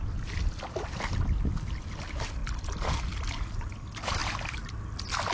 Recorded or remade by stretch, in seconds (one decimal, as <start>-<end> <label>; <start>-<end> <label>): 0.0-5.3 recorded